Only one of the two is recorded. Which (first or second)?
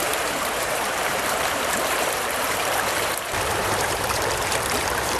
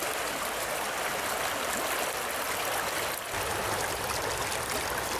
second